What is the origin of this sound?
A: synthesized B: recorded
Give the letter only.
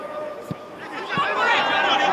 B